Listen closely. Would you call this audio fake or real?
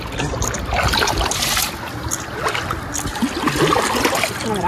real